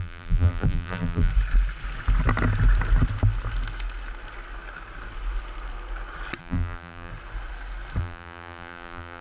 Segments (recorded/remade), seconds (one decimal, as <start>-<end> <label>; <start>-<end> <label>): 0.0-1.3 remade; 1.3-6.4 recorded; 6.4-7.1 remade; 7.1-8.0 recorded; 8.0-9.2 remade